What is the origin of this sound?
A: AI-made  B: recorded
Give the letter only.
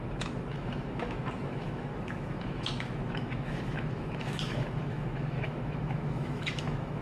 A